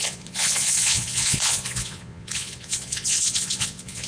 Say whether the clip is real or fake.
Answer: fake